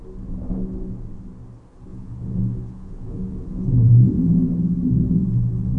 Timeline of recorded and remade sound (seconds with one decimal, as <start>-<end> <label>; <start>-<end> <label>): 0.0-1.9 recorded; 1.9-4.5 remade; 4.5-5.8 recorded